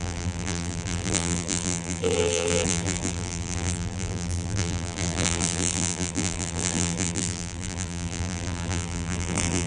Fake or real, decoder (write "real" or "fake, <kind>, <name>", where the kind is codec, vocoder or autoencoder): fake, vocoder, BigVGAN v2